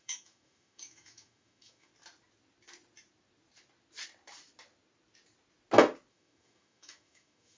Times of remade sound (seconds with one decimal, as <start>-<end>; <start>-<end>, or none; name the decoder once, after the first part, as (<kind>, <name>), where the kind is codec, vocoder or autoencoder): 0.0-1.9 (autoencoder, DAC-VAE); 6.1-7.6